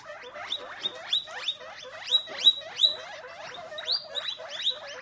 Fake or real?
real